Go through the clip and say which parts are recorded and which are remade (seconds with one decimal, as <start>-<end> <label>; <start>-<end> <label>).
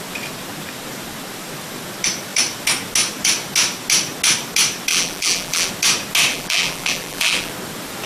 0.0-4.9 recorded; 4.9-5.7 remade; 5.7-6.3 recorded; 6.3-7.5 remade; 7.5-8.1 recorded